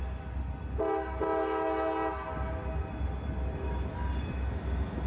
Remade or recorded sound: recorded